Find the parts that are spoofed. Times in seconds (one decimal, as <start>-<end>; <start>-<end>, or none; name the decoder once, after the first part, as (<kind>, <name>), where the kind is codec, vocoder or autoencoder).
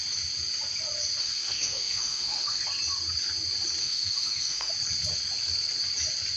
1.2-2.6 (autoencoder, DAC-VAE); 3.8-4.7